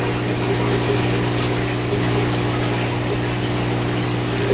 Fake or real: real